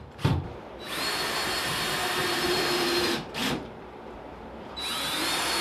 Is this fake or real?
fake